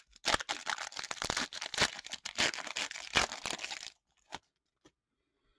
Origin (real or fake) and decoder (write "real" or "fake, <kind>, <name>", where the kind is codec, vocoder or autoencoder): real